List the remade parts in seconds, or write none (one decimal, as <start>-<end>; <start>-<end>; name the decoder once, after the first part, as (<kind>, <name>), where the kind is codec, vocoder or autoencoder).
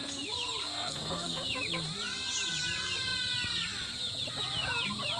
0.6-1.4 (codec, SNAC)